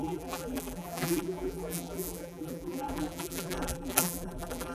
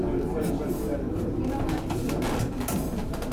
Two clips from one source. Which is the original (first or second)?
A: second